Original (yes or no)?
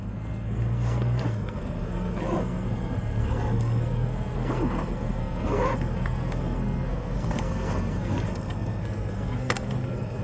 no